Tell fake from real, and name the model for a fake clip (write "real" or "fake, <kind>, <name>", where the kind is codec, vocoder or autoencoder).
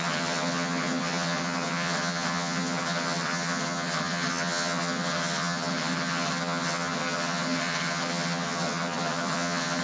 fake, vocoder, HiFi-GAN